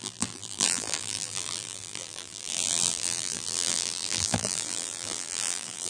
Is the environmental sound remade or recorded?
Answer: remade